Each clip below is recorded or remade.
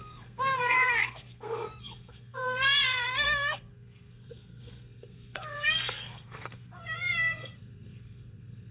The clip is remade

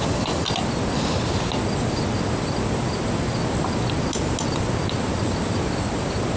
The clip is recorded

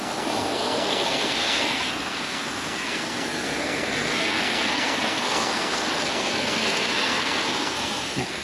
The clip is remade